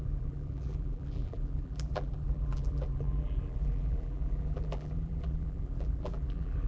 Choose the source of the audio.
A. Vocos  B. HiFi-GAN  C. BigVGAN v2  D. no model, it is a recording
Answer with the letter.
C